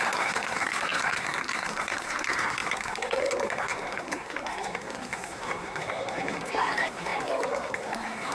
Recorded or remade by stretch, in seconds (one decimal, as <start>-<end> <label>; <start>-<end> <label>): 0.0-8.3 remade